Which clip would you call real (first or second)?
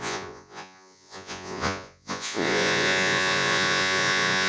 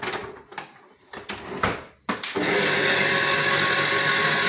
second